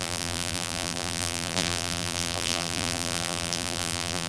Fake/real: fake